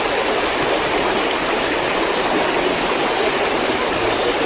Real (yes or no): yes